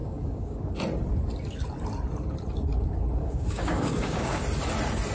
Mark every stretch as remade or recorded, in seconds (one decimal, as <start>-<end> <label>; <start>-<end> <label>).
0.0-0.7 remade; 0.7-3.2 recorded; 3.2-4.4 remade; 4.4-5.1 recorded